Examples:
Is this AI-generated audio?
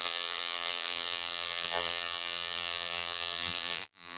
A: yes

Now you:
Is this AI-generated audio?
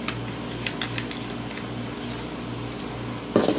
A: no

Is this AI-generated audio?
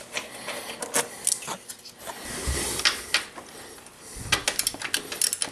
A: no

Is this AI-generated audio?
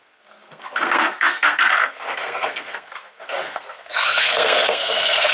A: yes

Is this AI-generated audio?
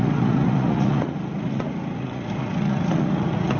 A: yes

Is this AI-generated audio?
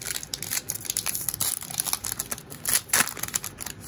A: no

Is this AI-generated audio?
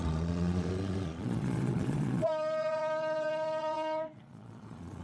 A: yes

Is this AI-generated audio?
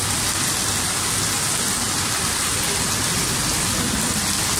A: no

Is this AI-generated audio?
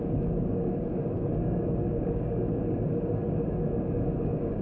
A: yes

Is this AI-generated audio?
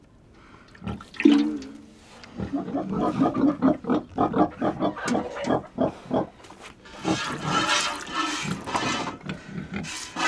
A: no